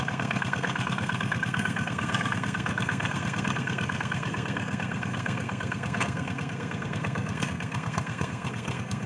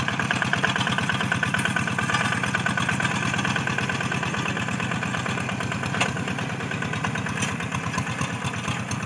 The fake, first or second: first